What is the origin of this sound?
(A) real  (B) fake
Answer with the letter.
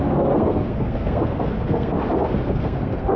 B